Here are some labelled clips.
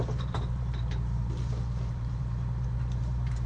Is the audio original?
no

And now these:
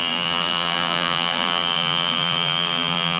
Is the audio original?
no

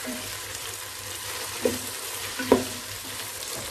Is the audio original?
no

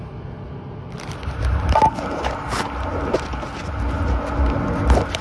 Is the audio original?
yes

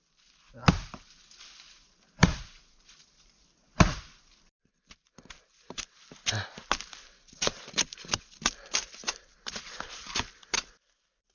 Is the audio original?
no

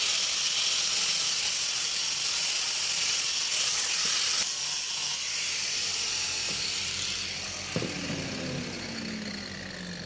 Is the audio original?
yes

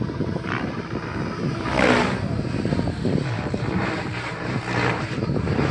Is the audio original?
no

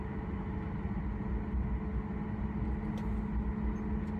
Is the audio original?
yes